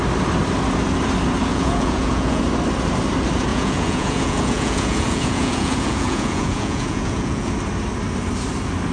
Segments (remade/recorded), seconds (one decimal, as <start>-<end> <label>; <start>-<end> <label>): 0.0-1.5 recorded; 1.5-2.4 remade; 2.4-3.5 recorded; 3.5-7.5 remade; 7.5-8.9 recorded